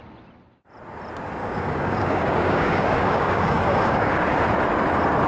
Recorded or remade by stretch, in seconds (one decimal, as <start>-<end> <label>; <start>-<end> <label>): 0.0-1.4 recorded; 1.4-4.1 remade; 4.1-5.3 recorded